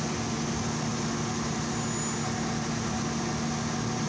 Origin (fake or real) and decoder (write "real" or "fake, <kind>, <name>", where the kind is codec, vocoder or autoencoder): real